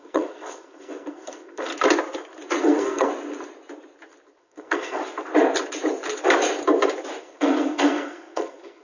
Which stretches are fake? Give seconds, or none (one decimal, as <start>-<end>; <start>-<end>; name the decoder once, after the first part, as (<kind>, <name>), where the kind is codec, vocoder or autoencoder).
0.0-1.7 (codec, SNAC); 2.6-3.1; 4.4-5.0; 7.2-8.8